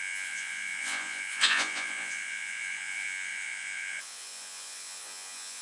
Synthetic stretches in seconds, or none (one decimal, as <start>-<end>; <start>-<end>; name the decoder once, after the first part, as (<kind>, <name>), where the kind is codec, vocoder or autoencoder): 0.0-5.6 (vocoder, Vocos)